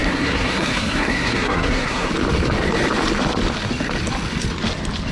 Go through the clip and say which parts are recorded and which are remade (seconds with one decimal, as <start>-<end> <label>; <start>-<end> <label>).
0.0-2.1 remade; 2.1-5.1 recorded

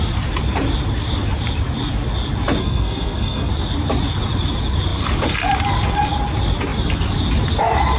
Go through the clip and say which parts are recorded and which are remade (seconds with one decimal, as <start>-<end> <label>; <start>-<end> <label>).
0.0-2.6 recorded; 2.6-3.5 remade; 3.5-8.0 recorded